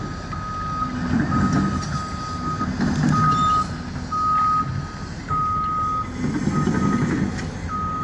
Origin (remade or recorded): recorded